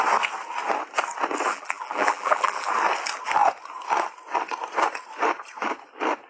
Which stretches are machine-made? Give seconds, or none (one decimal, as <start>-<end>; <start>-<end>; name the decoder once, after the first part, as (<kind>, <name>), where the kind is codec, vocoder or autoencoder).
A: 1.5-2.7 (vocoder, BigVGAN v2)